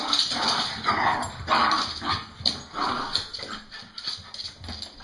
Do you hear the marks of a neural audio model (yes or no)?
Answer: no